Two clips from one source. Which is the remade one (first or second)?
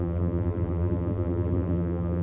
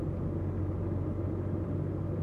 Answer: first